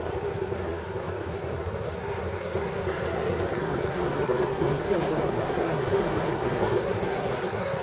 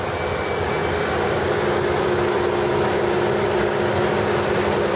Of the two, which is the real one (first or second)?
second